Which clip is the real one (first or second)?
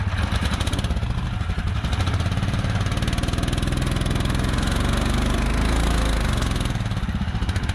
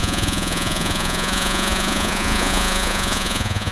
first